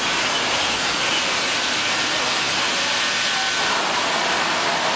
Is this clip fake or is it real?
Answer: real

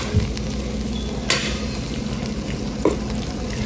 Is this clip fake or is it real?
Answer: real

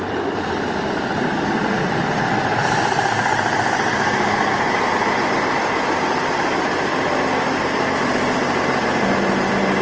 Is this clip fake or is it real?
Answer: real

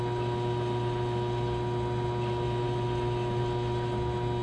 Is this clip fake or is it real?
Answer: real